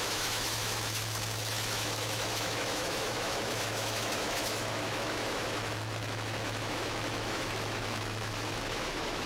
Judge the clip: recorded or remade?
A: remade